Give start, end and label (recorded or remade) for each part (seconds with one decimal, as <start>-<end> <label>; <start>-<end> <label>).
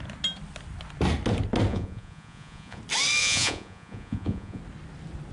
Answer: 0.0-1.7 recorded; 1.7-2.8 remade; 2.8-3.2 recorded; 3.2-4.6 remade; 4.6-5.3 recorded